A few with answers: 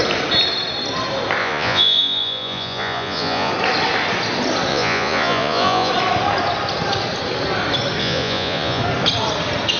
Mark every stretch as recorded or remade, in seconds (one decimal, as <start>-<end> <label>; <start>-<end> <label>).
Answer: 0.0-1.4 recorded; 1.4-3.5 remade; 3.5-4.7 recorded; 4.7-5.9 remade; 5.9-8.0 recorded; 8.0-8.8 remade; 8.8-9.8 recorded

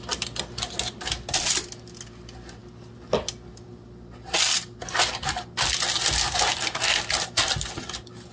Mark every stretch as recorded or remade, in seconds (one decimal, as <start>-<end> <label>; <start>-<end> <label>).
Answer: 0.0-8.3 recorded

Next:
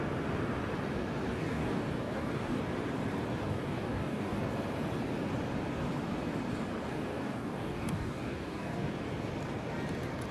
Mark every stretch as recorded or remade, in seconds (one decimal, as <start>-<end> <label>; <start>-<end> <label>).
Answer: 0.0-1.3 recorded; 1.3-2.6 remade; 2.6-3.5 recorded; 3.5-4.4 remade; 4.4-6.9 recorded; 6.9-8.9 remade; 8.9-10.3 recorded

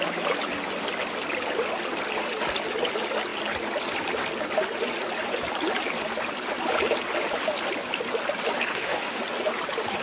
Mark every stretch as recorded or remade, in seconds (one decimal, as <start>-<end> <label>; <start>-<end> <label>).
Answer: 0.0-8.7 recorded; 8.7-9.2 remade; 9.2-10.0 recorded

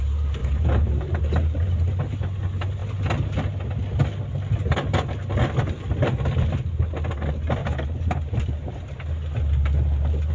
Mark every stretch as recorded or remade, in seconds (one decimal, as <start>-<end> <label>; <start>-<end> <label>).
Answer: 0.0-0.4 recorded; 0.4-1.9 remade; 1.9-7.6 recorded; 7.6-9.0 remade; 9.0-10.3 recorded